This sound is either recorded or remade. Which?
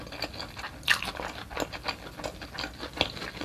recorded